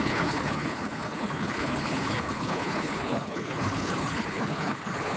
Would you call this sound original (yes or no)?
no